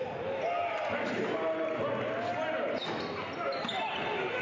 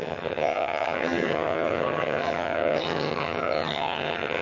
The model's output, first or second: second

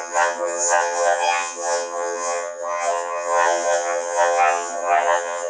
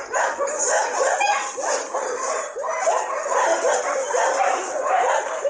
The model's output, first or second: first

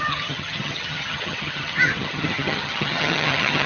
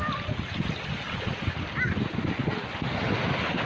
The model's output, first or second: first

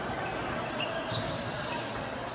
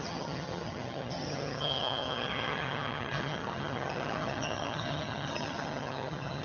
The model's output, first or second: second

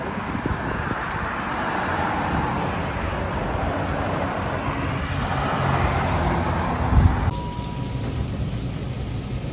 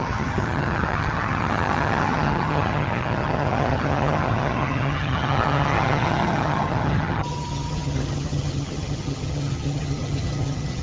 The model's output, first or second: second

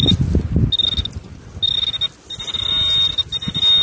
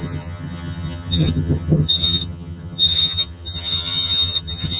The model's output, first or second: second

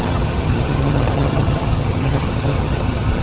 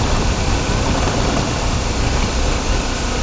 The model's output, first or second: first